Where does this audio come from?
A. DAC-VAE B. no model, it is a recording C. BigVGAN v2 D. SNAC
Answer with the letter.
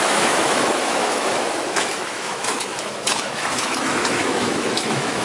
A